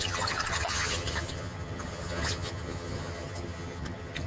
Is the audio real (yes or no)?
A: no